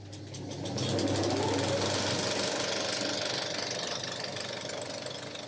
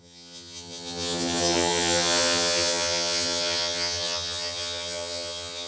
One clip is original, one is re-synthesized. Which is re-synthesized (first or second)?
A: second